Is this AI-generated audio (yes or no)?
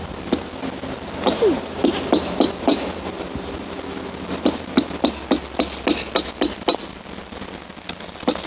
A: no